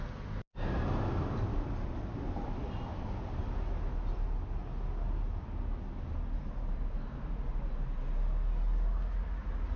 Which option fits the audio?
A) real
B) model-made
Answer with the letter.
A